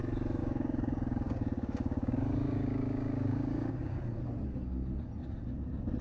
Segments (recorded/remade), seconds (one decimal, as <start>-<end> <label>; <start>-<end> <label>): 0.0-0.4 recorded; 0.4-4.0 remade; 4.0-6.0 recorded